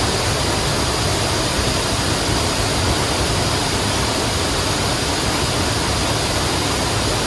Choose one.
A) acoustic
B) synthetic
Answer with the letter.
A